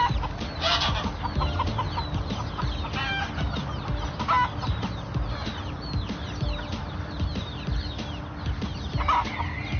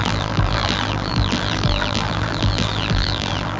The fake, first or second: second